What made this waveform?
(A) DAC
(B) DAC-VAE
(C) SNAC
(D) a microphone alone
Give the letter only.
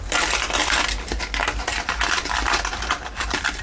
D